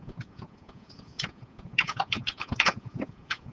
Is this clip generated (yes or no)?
yes